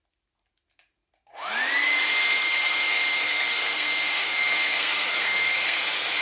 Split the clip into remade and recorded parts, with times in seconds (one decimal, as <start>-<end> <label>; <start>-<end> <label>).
0.0-2.1 recorded; 2.1-5.8 remade; 5.8-6.2 recorded

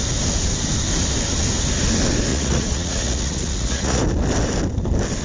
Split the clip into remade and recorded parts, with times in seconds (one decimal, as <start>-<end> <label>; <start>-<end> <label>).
0.0-2.3 recorded; 2.3-4.0 remade; 4.0-5.2 recorded

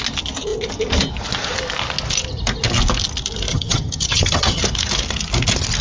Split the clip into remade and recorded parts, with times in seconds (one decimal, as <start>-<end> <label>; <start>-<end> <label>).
0.0-3.5 recorded; 3.5-4.6 remade; 4.6-5.8 recorded

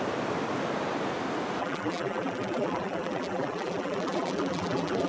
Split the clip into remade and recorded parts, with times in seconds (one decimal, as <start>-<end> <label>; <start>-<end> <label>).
0.0-1.6 recorded; 1.6-5.1 remade

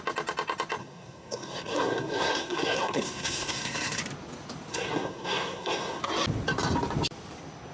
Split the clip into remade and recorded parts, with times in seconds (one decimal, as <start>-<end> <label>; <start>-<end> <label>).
0.0-0.8 recorded; 0.8-4.0 remade; 4.0-4.7 recorded; 4.7-6.0 remade; 6.0-7.7 recorded

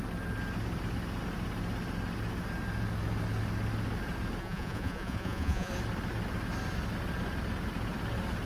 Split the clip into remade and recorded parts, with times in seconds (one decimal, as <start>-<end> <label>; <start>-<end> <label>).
0.0-4.4 recorded; 4.4-5.7 remade; 5.7-8.5 recorded

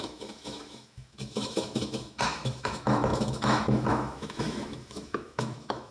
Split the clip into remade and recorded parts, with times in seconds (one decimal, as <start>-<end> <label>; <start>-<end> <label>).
0.0-5.9 remade